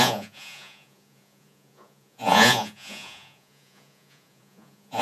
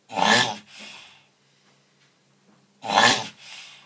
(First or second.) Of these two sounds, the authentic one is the second